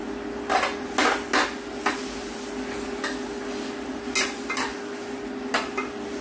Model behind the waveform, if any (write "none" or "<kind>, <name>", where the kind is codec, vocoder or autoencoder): none